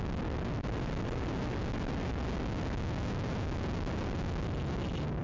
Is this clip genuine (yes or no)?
yes